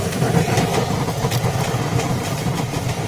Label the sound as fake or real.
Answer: fake